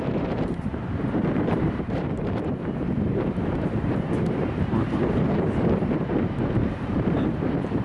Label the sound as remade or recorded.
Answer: remade